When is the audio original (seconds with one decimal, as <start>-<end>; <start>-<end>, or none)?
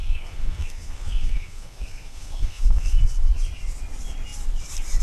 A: 3.0-5.0